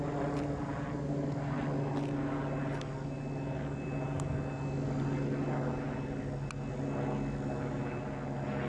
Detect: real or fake real